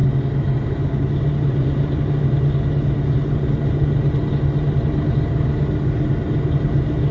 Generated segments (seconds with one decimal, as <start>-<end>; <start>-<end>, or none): none